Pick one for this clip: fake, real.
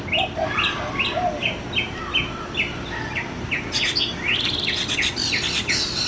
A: real